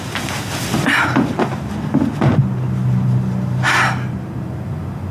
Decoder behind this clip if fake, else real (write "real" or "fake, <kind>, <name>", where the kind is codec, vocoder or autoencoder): real